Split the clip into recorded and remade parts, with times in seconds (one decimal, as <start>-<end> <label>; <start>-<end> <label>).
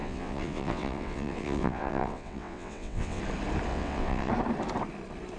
0.0-3.2 remade; 3.2-3.7 recorded; 3.7-4.3 remade; 4.3-5.4 recorded